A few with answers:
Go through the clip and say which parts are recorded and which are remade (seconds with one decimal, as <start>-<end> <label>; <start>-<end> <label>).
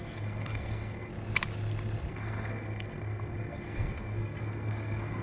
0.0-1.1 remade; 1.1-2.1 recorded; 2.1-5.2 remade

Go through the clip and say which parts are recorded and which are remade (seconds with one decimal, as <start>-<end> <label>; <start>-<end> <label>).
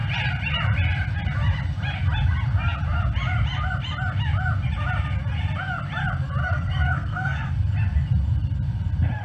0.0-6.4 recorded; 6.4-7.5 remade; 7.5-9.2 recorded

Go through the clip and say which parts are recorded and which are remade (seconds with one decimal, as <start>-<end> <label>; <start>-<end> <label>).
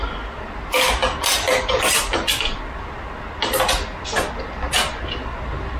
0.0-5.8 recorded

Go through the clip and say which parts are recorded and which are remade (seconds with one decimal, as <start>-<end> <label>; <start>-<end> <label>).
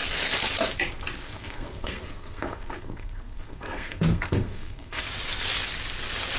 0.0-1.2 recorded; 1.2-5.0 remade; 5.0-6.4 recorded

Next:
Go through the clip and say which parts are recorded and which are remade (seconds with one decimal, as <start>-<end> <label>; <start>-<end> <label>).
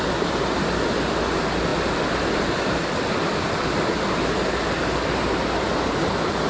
0.0-6.5 recorded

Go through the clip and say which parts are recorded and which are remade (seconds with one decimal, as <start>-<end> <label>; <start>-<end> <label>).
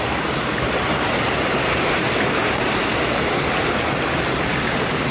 0.0-5.1 recorded